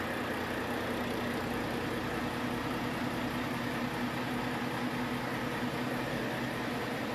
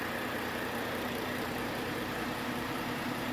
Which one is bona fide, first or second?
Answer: first